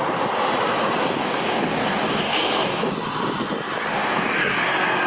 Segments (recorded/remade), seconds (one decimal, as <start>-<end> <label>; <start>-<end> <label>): 0.0-1.2 recorded; 1.2-2.9 remade; 2.9-3.9 recorded; 3.9-4.6 remade; 4.6-5.1 recorded